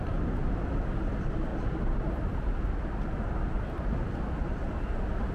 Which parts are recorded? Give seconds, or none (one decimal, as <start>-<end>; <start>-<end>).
0.0-1.5; 4.7-5.3